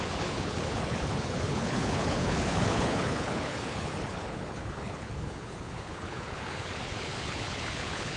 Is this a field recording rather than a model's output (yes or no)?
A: no